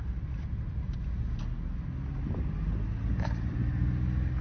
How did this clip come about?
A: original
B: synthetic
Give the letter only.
A